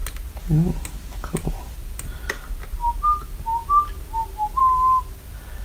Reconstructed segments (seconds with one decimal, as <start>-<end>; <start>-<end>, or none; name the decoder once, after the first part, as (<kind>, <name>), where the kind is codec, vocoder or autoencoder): none